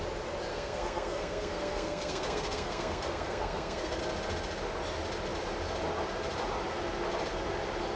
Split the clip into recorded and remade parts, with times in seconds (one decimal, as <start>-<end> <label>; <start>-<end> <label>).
0.0-0.5 recorded; 0.5-4.0 remade; 4.0-8.0 recorded